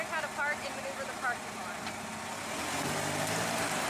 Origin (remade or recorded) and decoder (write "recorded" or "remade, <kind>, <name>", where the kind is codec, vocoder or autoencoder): recorded